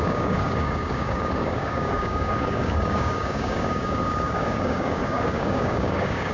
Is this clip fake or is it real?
fake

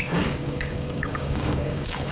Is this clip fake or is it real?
fake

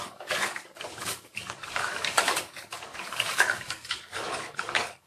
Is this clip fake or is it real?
fake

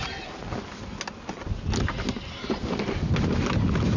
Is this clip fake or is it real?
real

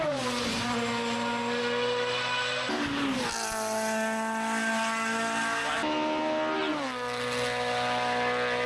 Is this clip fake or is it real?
real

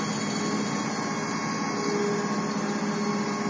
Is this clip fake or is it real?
real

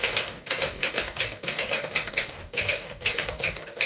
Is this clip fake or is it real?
fake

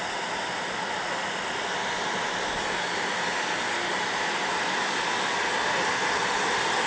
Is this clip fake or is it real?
real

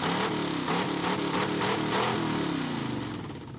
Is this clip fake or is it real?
real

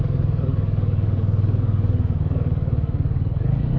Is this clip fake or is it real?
fake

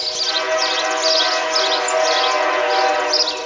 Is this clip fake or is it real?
real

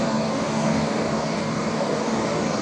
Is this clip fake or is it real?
fake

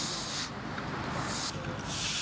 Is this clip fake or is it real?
real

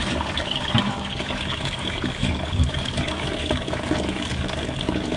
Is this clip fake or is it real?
fake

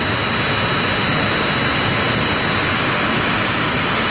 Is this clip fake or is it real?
real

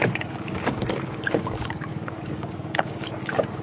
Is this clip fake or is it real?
fake